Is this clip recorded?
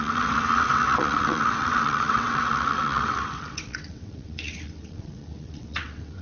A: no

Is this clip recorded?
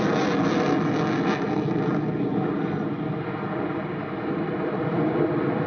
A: yes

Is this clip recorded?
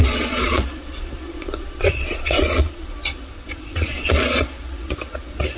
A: no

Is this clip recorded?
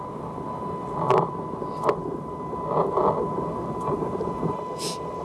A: yes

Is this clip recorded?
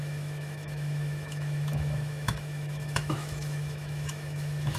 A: no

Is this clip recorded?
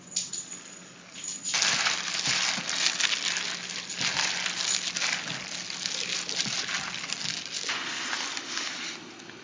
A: yes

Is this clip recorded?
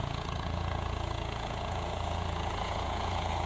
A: no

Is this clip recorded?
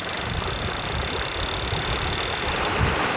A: yes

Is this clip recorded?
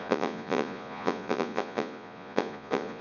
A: no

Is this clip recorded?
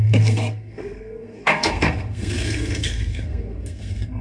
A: no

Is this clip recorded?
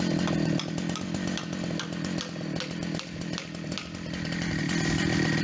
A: yes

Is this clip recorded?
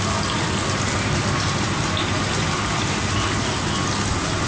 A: yes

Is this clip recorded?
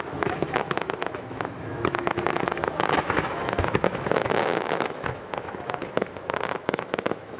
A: no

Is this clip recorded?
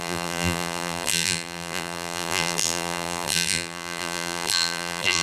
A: no